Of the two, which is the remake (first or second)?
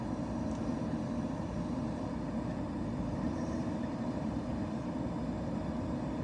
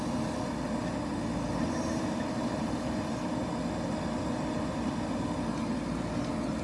first